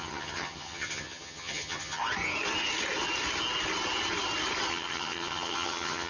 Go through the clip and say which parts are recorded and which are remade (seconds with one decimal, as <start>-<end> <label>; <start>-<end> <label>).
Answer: 0.0-2.0 remade; 2.0-4.7 recorded; 4.7-6.1 remade